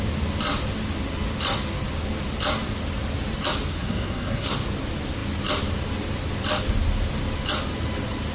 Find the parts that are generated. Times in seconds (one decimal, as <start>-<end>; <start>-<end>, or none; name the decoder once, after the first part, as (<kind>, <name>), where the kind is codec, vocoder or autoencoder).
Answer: 3.7-4.5 (codec, SNAC)